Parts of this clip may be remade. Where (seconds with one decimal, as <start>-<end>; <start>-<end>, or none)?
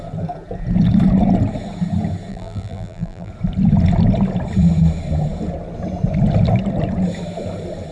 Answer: 2.3-3.3